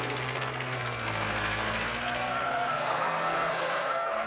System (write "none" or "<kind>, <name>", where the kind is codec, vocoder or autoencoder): codec, SNAC